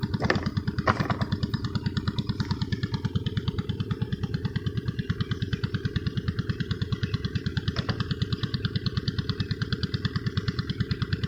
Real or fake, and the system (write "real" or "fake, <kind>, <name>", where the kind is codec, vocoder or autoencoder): fake, vocoder, BigVGAN v2